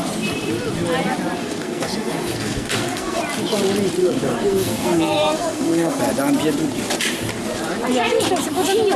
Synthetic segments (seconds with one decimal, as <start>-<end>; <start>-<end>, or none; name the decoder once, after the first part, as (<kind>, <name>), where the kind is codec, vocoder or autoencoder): 1.4-3.2 (codec, SNAC); 4.0-6.0